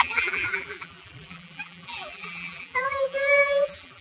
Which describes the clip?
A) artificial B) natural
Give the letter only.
A